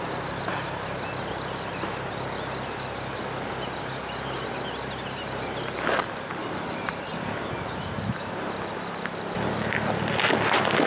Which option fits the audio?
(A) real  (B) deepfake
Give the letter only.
A